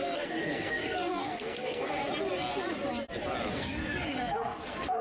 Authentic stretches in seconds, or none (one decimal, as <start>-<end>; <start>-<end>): 2.0-3.5